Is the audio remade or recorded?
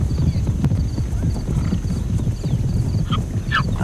recorded